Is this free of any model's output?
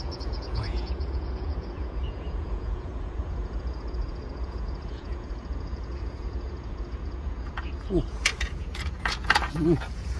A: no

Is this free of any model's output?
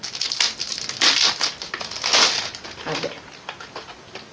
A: yes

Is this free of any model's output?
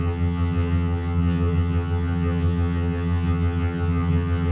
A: no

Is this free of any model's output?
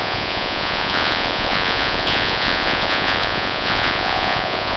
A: no